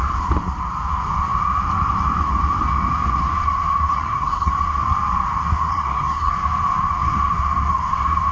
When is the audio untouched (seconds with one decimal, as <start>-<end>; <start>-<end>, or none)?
0.0-3.9; 4.5-5.7; 6.3-8.3